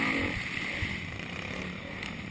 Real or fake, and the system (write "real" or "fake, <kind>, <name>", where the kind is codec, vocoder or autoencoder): fake, vocoder, BigVGAN v2